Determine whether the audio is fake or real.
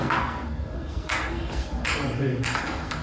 fake